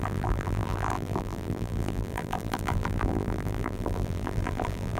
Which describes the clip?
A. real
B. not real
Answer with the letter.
B